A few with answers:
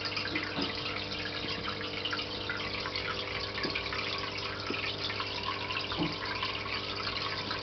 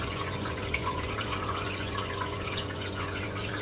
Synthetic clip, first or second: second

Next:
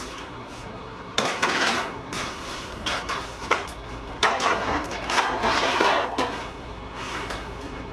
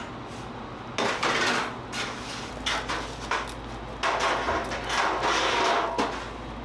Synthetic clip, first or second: first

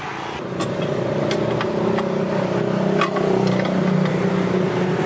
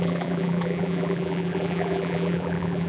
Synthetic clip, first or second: second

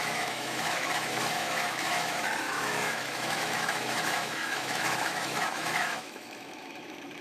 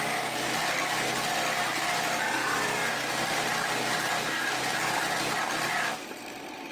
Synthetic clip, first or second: first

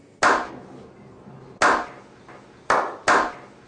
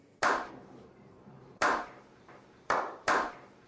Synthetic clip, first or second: second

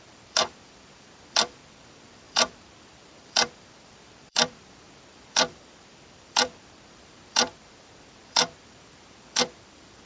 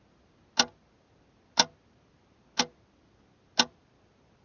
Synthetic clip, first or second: first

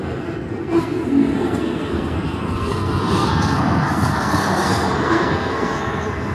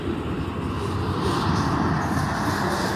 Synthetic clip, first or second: first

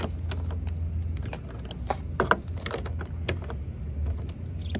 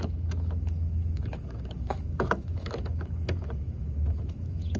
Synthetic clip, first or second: second